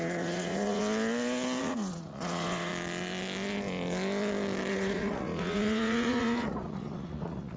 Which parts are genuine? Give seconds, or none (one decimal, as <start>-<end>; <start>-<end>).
0.8-1.6; 2.7-4.7